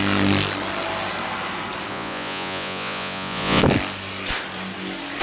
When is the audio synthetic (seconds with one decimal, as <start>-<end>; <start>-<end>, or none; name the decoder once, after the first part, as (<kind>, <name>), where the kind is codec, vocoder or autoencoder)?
1.9-3.6 (vocoder, Vocos)

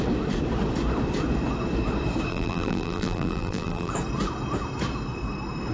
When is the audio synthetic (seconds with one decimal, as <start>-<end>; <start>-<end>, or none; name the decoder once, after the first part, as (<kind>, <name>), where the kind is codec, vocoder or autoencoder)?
2.3-3.9 (vocoder, BigVGAN v2)

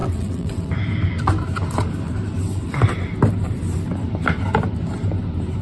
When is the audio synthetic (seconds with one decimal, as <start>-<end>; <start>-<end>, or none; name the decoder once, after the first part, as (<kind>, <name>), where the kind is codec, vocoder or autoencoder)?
0.0-0.7 (vocoder, WaveNeXt)